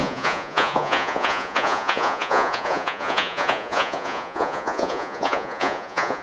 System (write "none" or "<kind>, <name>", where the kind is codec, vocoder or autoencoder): vocoder, Vocos